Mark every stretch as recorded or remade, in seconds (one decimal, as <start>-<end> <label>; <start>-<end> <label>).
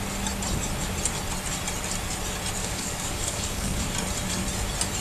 0.0-2.6 recorded; 2.6-3.9 remade; 3.9-5.0 recorded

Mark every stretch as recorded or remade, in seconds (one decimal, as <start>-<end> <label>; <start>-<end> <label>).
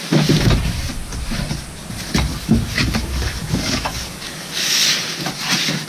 0.0-2.3 recorded; 2.3-4.7 remade; 4.7-5.9 recorded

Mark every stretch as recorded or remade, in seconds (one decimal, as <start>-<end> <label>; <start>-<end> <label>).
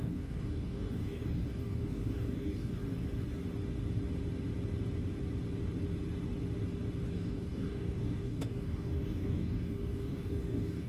0.0-2.7 remade; 2.7-7.1 recorded; 7.1-10.9 remade